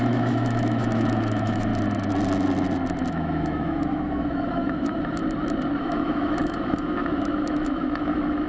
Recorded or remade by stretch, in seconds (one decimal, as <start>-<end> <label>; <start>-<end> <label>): 0.0-1.7 remade; 1.7-3.1 recorded; 3.1-5.2 remade; 5.2-5.8 recorded; 5.8-8.5 remade